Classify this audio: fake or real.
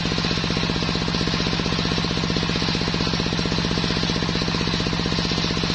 real